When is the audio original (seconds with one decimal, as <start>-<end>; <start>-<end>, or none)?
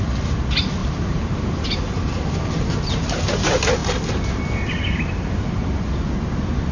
0.0-0.8; 3.3-6.7